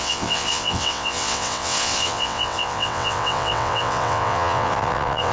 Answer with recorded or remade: remade